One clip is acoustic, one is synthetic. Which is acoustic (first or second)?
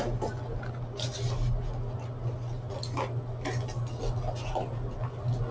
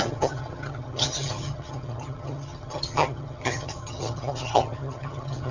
first